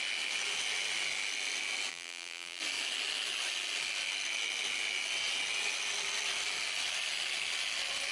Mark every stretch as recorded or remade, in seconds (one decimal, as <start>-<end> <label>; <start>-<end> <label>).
0.0-1.9 recorded; 1.9-2.6 remade; 2.6-8.1 recorded